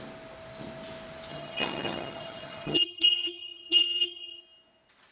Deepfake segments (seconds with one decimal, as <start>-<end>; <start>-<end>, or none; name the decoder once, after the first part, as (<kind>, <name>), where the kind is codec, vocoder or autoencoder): 1.3-4.4 (vocoder, HiFi-GAN)